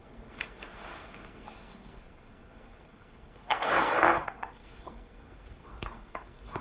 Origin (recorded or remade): remade